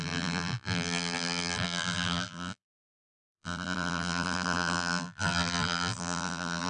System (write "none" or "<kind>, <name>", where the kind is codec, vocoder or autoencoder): vocoder, BigVGAN v2